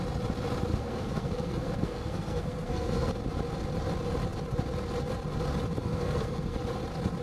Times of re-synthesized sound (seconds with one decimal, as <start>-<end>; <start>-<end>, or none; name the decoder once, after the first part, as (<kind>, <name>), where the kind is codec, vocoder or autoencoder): 0.7-3.1 (codec, SNAC); 5.8-6.6